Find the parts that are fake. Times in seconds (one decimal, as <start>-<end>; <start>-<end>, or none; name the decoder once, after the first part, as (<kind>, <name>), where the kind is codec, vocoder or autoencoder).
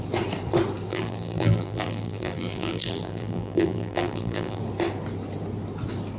0.9-4.6 (vocoder, BigVGAN v2)